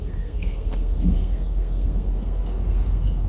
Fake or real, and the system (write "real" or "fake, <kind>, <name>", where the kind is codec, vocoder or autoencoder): fake, codec, SNAC